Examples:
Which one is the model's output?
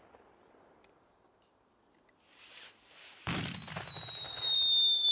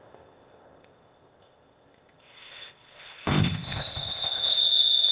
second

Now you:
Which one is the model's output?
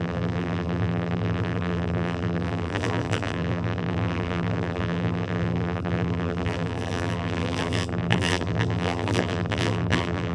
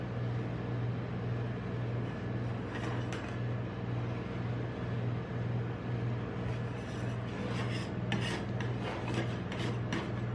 first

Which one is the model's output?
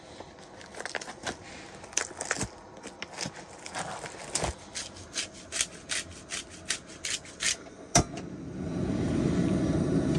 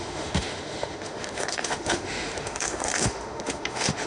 second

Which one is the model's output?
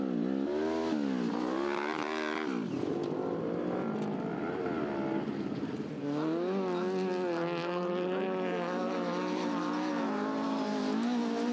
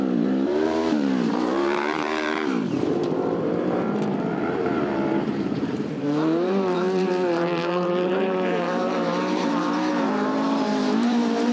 second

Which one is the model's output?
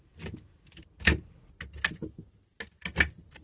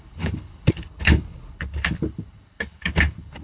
second